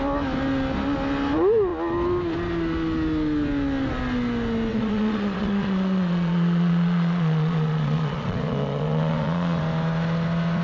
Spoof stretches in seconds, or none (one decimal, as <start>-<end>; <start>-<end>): 4.7-9.6